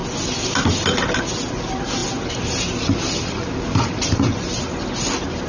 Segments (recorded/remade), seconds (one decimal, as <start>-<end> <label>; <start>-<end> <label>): 0.0-5.5 recorded